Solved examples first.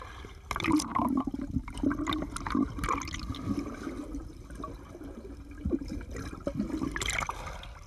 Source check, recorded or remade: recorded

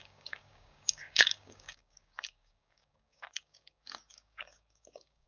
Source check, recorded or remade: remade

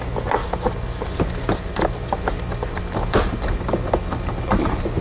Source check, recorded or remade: recorded